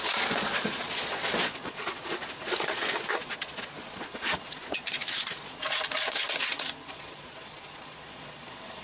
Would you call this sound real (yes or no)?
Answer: no